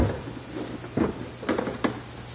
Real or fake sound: real